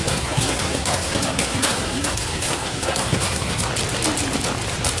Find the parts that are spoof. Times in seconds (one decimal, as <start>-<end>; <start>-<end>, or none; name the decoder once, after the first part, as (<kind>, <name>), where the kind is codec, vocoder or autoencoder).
0.0-3.7 (codec, SNAC)